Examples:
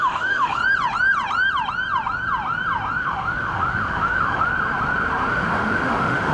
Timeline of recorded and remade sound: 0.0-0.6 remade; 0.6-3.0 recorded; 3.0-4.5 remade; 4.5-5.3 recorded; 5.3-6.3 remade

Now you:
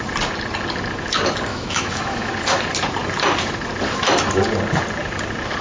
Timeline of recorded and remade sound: 0.0-1.5 recorded; 1.5-2.3 remade; 2.3-5.6 recorded

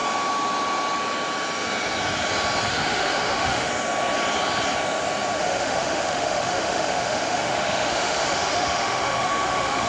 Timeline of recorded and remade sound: 0.0-2.7 recorded; 2.7-3.7 remade; 3.7-5.4 recorded; 5.4-9.9 remade

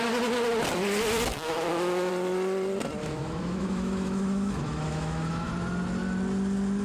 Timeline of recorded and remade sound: 0.0-1.3 recorded; 1.3-2.1 remade; 2.1-3.0 recorded; 3.0-5.5 remade; 5.5-6.8 recorded

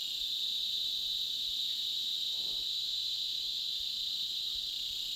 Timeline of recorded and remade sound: 0.0-2.7 recorded; 2.7-3.7 remade; 3.7-5.2 recorded

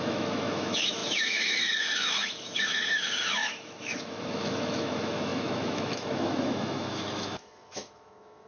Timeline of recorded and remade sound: 0.0-8.5 remade

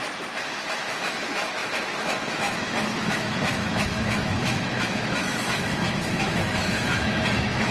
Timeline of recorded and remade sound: 0.0-0.5 recorded; 0.5-7.7 remade